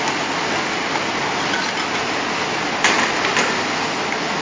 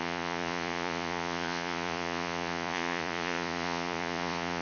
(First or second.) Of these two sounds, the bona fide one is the first